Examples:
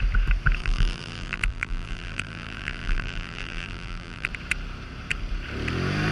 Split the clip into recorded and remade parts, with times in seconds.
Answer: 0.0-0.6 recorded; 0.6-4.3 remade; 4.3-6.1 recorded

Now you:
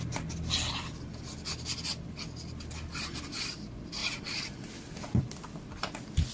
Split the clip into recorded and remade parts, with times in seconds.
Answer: 0.0-4.0 remade; 4.0-5.2 recorded; 5.2-6.3 remade